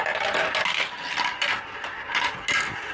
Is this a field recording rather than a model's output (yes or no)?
yes